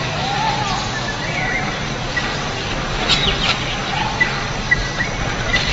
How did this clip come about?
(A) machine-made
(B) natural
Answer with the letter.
B